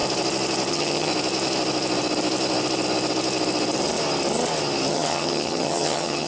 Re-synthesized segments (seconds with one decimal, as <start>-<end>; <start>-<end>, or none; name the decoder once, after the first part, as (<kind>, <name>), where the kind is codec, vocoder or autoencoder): 0.7-1.1 (vocoder, HiFi-GAN); 4.9-6.3